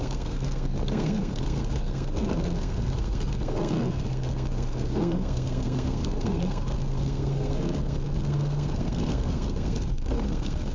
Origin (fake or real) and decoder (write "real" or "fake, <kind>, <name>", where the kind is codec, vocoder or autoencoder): fake, codec, SNAC